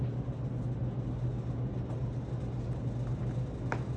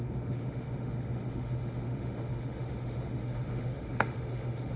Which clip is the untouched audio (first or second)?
first